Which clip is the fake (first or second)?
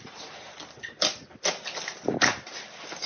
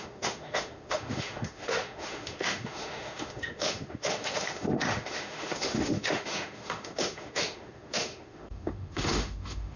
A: second